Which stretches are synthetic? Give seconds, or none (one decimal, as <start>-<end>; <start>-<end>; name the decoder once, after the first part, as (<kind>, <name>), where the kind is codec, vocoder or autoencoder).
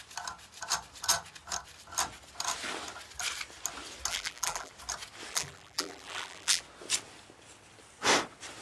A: 4.1-4.7 (vocoder, BigVGAN v2); 5.3-6.6